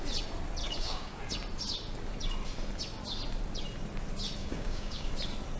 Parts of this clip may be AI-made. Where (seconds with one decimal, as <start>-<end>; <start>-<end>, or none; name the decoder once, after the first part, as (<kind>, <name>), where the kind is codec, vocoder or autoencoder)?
0.6-1.2 (codec, DAC); 4.4-5.1